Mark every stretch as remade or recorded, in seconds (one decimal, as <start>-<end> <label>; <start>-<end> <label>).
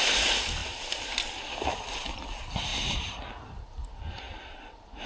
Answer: 0.0-5.1 recorded